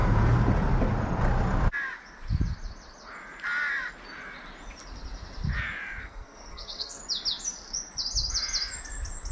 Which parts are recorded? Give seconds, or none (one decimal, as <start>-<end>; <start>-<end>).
0.0-6.0; 7.0-9.3